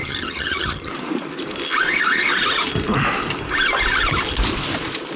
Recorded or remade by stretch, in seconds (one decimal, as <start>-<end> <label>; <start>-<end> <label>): 0.0-0.9 remade; 0.9-5.2 recorded